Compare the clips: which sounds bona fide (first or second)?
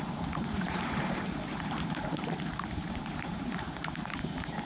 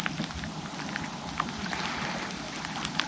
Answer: second